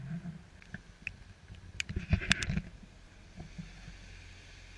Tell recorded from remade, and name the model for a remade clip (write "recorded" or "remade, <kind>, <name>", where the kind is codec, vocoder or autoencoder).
recorded